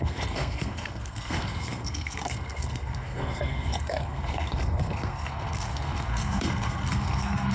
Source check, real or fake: fake